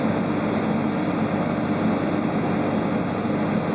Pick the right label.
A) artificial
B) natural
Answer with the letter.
B